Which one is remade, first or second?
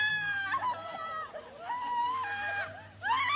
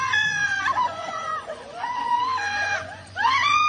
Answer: second